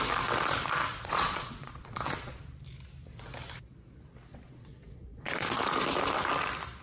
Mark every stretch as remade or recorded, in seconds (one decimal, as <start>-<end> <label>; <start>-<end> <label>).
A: 0.0-0.9 recorded; 0.9-2.4 remade; 2.4-4.3 recorded; 4.3-5.6 remade; 5.6-6.8 recorded